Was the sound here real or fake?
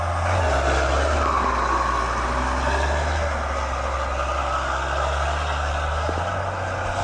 real